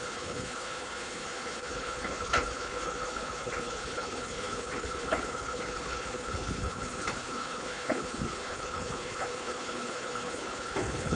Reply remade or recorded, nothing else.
remade